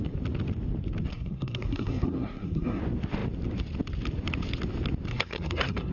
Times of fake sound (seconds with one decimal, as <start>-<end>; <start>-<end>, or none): 1.1-2.8; 5.1-5.9